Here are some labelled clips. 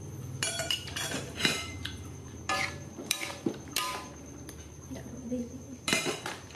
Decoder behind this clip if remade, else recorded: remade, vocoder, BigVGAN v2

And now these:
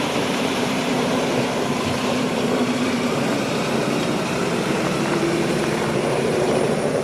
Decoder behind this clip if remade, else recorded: remade, vocoder, BigVGAN v2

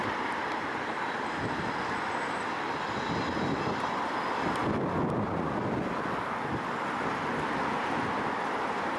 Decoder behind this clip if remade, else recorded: recorded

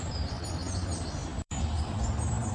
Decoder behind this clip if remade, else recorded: remade, vocoder, BigVGAN v2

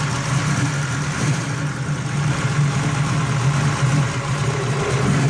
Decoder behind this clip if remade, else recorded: recorded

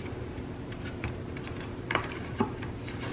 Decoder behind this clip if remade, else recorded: remade, vocoder, BigVGAN v2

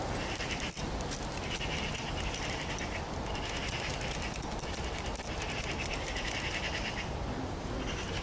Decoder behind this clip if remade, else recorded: recorded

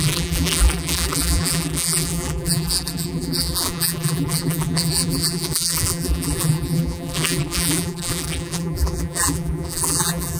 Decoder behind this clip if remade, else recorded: remade, vocoder, BigVGAN v2